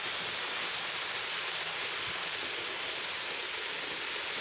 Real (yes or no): yes